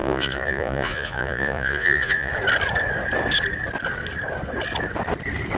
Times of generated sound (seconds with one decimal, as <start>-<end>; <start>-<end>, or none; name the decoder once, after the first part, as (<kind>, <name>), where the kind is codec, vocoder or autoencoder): 0.0-2.3 (vocoder, Vocos)